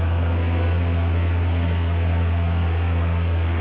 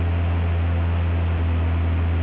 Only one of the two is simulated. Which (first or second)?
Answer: first